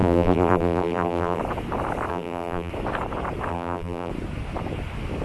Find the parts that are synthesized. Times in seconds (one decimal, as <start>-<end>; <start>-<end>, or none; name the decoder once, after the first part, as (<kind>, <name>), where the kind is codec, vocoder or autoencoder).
0.0-1.4 (vocoder, BigVGAN v2); 2.1-2.7; 3.5-4.1